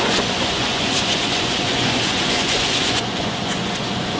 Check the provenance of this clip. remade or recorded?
remade